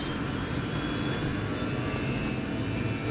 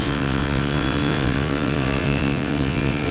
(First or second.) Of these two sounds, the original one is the first